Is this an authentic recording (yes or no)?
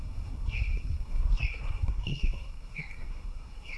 no